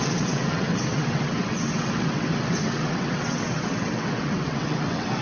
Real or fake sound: fake